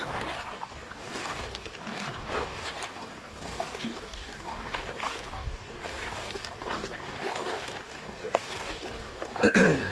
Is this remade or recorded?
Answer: remade